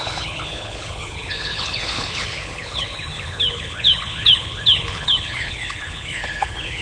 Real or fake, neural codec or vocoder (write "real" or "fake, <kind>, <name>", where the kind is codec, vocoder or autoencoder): fake, codec, HILCodec